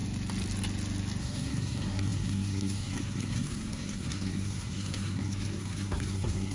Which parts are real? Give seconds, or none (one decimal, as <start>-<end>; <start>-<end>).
0.0-1.2